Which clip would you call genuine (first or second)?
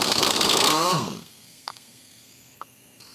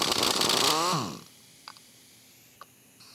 second